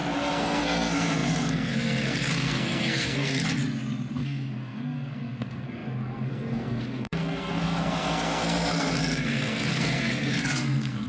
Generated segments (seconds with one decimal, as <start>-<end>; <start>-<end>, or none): 0.0-3.6; 4.2-11.1